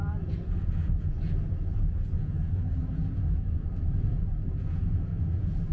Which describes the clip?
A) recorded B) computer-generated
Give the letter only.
B